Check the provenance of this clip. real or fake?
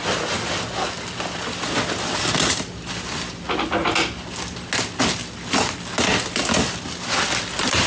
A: real